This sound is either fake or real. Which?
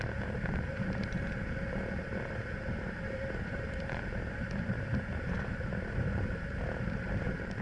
fake